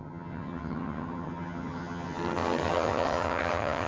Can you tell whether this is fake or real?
fake